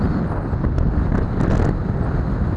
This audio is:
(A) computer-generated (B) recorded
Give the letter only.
B